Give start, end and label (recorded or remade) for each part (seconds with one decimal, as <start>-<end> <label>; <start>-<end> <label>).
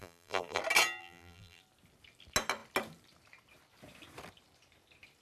0.0-0.6 remade; 0.6-1.0 recorded; 1.0-1.6 remade; 1.6-5.2 recorded